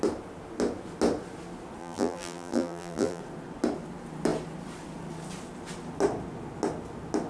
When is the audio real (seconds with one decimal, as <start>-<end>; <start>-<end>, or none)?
0.0-1.8; 3.2-7.3